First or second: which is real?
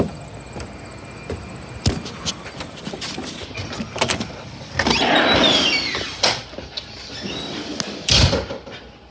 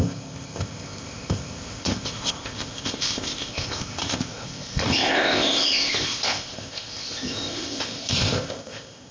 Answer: first